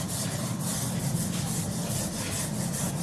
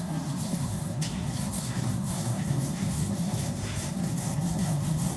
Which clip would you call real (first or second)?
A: first